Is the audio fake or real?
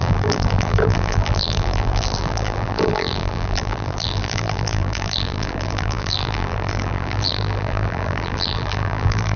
fake